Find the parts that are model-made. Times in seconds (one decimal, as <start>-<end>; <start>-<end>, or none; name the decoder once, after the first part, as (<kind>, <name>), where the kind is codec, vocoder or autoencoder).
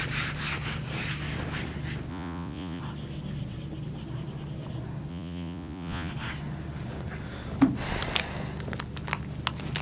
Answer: 2.1-2.8 (vocoder, Vocos); 5.1-6.1